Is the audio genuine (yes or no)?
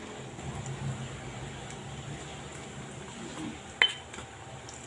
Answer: yes